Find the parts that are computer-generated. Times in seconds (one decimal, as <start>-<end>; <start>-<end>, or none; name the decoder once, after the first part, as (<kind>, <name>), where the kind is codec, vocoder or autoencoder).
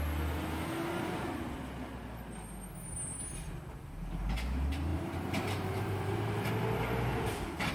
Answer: 4.9-6.5 (vocoder, BigVGAN v2)